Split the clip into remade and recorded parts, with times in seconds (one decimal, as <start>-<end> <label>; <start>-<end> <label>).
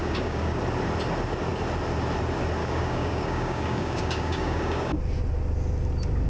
0.0-0.6 remade; 0.6-2.6 recorded; 2.6-5.0 remade; 5.0-6.3 recorded